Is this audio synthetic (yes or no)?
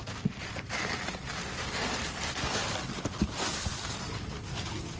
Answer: no